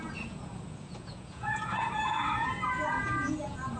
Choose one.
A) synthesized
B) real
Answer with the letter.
A